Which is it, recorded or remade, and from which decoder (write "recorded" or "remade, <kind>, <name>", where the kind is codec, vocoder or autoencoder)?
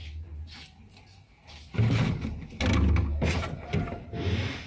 recorded